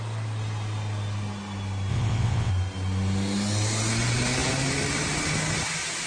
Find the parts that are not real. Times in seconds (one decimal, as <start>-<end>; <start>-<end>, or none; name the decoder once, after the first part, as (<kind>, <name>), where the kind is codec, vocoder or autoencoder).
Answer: 1.9-2.5 (vocoder, WaveNeXt)